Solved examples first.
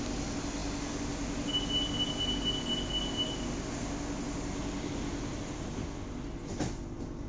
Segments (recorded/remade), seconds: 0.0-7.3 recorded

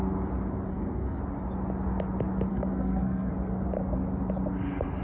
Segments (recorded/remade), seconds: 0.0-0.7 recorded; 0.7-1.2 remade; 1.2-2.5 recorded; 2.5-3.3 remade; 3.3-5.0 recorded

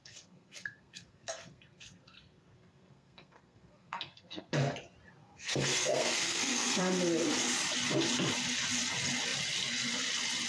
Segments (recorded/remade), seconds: 0.0-4.5 remade; 4.5-5.2 recorded; 5.2-6.8 remade; 6.8-10.5 recorded